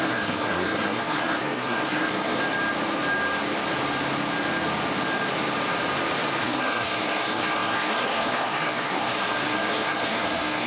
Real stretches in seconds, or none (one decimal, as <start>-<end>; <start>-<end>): 2.4-6.4